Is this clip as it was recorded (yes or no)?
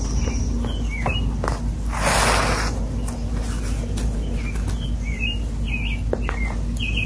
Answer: yes